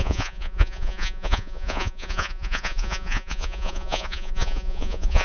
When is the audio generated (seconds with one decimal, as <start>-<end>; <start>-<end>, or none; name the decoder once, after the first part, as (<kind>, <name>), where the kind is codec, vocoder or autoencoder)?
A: 0.0-5.2 (vocoder, Vocos)